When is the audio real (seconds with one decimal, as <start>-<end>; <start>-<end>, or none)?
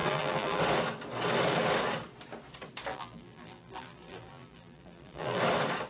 0.6-2.9; 5.4-5.9